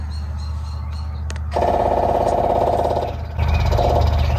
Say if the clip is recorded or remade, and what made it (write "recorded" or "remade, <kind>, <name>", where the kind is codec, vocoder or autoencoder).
recorded